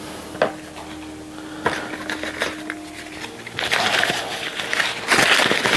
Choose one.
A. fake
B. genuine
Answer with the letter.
B